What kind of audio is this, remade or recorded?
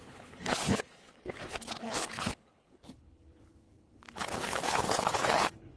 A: remade